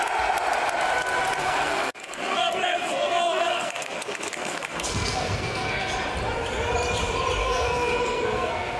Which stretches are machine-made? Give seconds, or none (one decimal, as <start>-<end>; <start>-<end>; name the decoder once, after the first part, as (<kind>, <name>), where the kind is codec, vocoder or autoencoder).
1.4-5.9 (codec, SNAC); 7.4-8.8